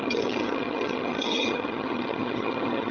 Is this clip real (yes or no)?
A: no